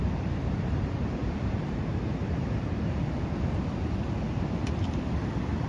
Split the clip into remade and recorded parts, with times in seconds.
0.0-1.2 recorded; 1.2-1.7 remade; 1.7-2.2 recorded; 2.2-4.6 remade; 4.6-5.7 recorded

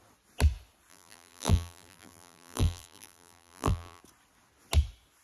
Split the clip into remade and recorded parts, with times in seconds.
0.0-0.9 recorded; 0.9-4.0 remade; 4.0-5.2 recorded

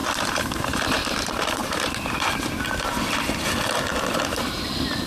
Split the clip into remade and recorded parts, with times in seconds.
0.0-5.1 recorded

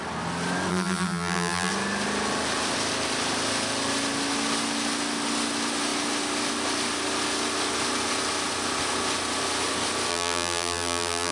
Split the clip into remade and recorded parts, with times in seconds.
0.0-0.7 recorded; 0.7-1.7 remade; 1.7-10.1 recorded; 10.1-11.3 remade